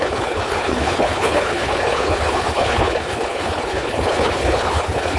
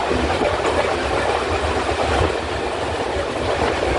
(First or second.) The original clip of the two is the second